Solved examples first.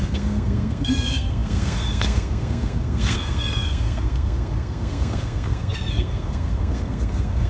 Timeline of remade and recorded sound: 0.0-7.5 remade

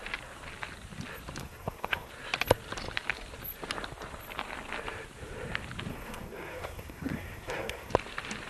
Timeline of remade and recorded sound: 0.0-1.4 recorded; 1.4-2.1 remade; 2.1-5.9 recorded; 5.9-7.9 remade; 7.9-8.5 recorded

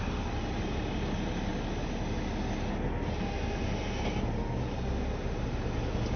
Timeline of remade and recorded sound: 0.0-6.2 recorded

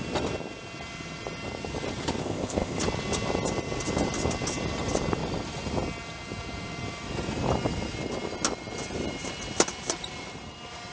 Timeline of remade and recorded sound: 0.0-2.2 recorded; 2.2-2.8 remade; 2.8-10.9 recorded

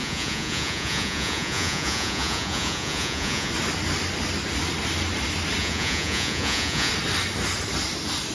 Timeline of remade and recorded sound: 0.0-3.5 remade; 3.5-5.6 recorded; 5.6-6.9 remade; 6.9-8.3 recorded

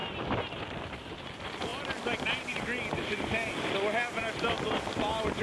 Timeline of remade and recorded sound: 0.0-1.0 remade; 1.0-5.4 recorded

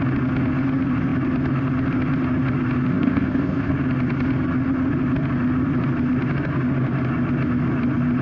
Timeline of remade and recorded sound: 0.0-2.9 recorded; 2.9-3.7 remade; 3.7-8.2 recorded

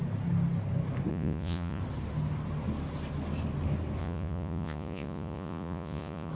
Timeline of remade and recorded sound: 0.0-1.1 recorded; 1.1-1.8 remade; 1.8-4.0 recorded; 4.0-6.3 remade